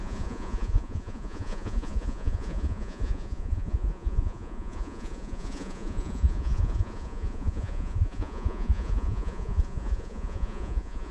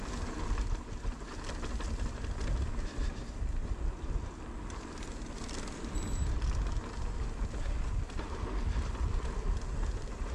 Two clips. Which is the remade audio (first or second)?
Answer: first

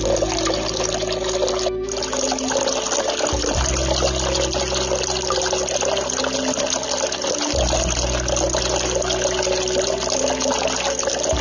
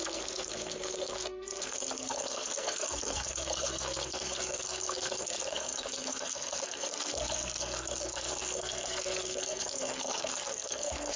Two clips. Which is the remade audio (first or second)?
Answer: second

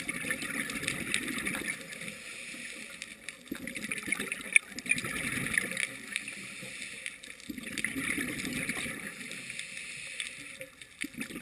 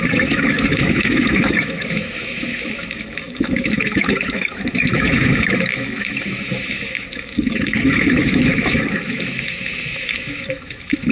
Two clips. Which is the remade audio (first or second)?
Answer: second